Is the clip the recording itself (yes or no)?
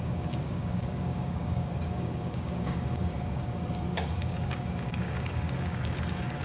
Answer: no